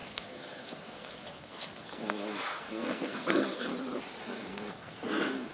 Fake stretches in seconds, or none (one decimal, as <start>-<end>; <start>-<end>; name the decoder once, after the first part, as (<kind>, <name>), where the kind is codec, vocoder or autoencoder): 0.0-3.7 (codec, SNAC); 4.2-5.5